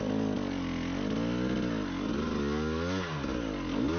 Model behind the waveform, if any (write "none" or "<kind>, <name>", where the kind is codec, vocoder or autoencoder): none